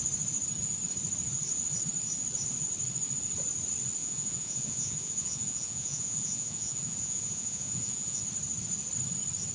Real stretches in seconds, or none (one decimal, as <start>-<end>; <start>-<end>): 0.0-4.0; 8.2-9.5